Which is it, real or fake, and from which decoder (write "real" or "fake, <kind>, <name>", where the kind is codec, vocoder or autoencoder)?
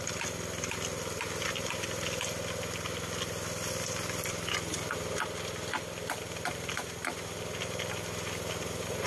real